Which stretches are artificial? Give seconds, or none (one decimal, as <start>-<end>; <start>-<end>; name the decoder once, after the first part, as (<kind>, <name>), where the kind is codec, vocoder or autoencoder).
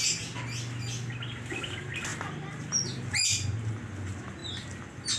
none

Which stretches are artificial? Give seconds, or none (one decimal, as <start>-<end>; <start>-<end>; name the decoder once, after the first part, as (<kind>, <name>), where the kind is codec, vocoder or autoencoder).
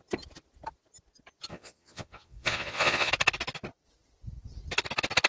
1.5-3.1 (vocoder, Vocos)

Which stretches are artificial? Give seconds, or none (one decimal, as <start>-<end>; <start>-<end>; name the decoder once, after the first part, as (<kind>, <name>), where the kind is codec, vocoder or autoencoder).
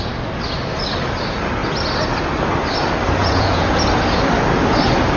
3.2-3.8 (vocoder, Vocos)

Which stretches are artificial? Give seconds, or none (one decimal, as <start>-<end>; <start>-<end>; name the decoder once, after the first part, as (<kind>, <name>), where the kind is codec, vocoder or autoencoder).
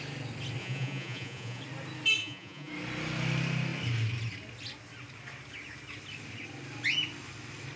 0.6-1.6 (vocoder, Vocos); 2.2-2.7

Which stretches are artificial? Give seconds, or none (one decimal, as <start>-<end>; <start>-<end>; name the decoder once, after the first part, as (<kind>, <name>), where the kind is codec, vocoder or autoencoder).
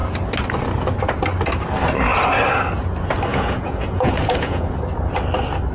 3.3-4.7 (vocoder, Vocos)